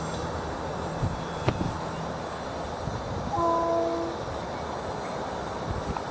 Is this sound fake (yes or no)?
yes